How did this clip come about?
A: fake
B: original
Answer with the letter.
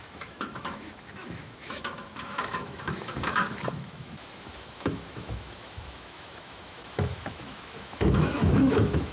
A